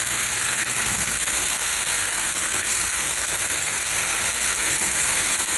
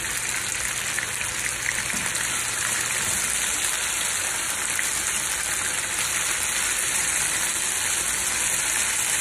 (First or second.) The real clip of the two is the second